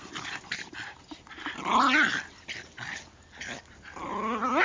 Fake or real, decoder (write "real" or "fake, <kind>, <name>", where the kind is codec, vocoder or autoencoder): real